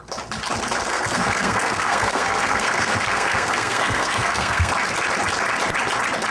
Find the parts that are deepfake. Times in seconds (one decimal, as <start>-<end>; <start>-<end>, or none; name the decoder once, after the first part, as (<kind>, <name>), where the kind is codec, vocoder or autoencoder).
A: 0.9-4.7 (codec, SNAC)

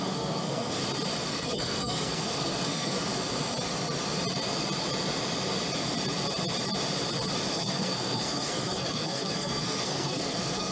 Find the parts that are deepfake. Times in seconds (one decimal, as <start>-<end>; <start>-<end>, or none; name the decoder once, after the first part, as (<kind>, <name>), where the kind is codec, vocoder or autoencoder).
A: 0.0-0.8 (codec, SNAC); 1.3-3.1; 7.5-10.7